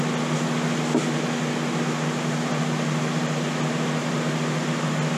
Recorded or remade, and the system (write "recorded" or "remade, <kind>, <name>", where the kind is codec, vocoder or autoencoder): recorded